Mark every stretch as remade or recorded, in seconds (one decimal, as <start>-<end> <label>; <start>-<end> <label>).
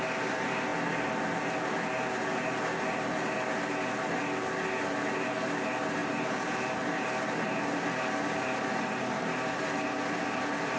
0.0-10.8 recorded